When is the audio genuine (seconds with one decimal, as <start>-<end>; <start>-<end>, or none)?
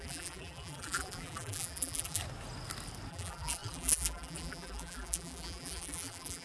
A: 2.2-3.1